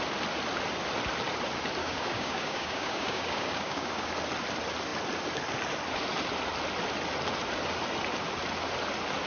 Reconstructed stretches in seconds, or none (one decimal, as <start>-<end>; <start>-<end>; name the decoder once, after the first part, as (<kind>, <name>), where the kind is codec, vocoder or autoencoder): 1.8-4.1 (codec, DAC)